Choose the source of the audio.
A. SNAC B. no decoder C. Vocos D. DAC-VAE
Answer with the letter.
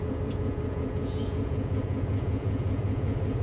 C